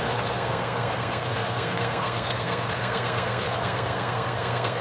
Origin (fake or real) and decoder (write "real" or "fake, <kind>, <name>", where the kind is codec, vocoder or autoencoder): fake, codec, SNAC